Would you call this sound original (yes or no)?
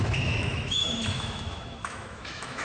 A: no